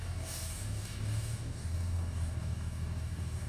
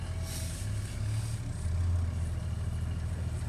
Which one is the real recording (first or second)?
second